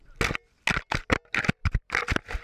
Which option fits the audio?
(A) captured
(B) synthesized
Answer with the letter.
A